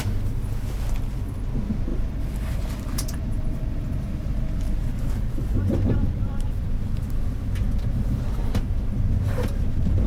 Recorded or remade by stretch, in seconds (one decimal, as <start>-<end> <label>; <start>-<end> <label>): 0.0-1.9 recorded; 1.9-7.0 remade; 7.0-8.4 recorded; 8.4-9.7 remade; 9.7-10.1 recorded